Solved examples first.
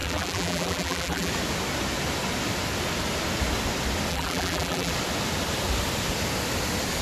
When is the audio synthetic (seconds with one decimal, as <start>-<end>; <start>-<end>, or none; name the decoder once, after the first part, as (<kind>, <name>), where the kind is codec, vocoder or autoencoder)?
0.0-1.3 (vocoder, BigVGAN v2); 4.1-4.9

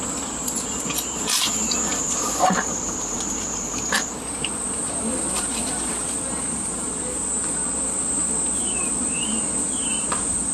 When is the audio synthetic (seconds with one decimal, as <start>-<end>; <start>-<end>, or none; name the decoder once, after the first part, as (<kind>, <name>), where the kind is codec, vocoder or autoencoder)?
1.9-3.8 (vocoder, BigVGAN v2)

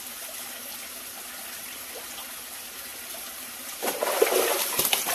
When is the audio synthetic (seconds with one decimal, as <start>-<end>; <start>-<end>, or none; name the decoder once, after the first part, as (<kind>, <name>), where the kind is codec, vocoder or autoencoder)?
none

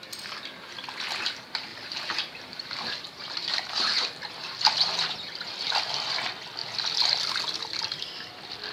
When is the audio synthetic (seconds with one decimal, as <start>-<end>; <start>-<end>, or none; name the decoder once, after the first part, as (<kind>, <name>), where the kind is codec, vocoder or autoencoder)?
1.7-5.7 (vocoder, BigVGAN v2)